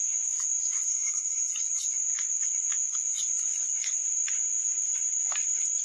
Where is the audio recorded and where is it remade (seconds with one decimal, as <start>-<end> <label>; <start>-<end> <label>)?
0.0-0.9 recorded; 0.9-1.5 remade; 1.5-5.8 recorded